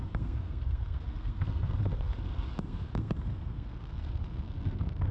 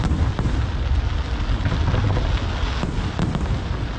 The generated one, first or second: first